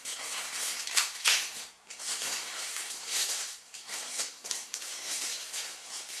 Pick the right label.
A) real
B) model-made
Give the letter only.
B